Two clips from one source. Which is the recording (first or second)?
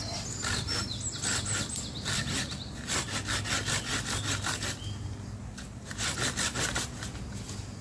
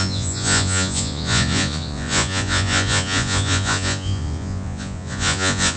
first